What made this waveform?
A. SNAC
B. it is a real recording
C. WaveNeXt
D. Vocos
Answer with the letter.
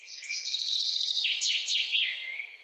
A